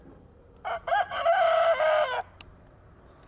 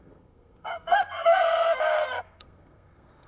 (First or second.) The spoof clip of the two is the second